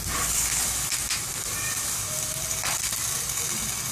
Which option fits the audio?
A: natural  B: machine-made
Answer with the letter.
A